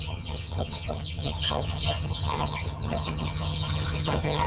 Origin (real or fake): fake